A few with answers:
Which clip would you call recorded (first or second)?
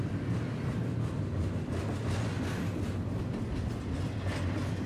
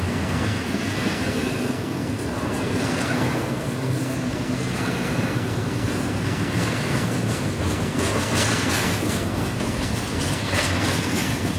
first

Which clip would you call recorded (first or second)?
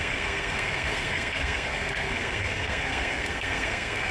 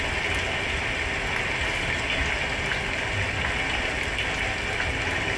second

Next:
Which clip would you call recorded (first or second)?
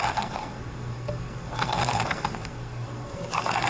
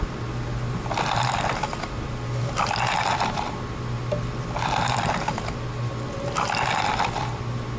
second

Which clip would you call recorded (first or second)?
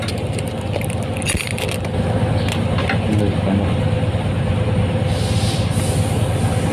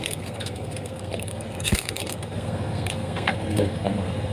first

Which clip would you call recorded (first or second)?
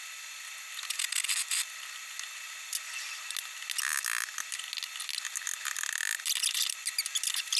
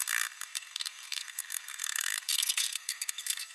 first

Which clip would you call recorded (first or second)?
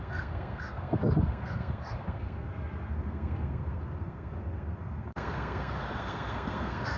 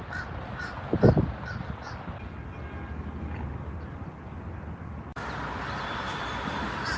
second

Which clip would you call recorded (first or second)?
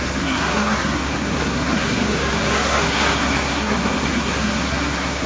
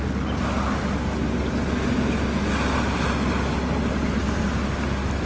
second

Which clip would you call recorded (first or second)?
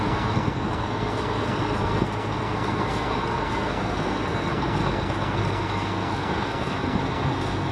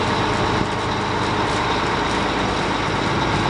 second